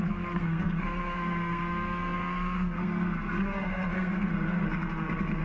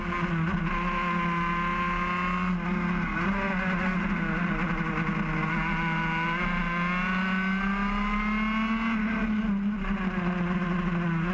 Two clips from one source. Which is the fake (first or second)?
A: first